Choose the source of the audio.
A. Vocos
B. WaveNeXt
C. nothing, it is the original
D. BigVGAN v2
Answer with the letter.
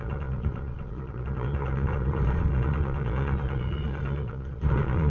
A